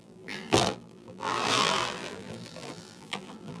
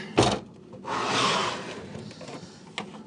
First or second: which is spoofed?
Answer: first